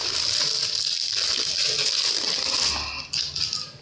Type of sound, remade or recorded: recorded